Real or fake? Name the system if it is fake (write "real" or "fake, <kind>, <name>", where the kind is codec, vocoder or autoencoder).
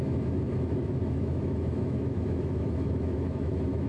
fake, autoencoder, DAC-VAE